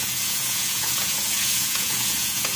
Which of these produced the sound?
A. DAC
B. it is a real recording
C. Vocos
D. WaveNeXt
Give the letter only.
C